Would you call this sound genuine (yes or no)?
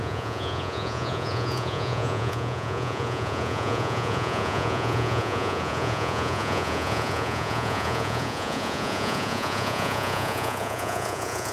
no